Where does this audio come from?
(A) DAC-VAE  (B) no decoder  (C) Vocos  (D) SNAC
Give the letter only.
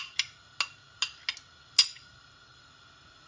B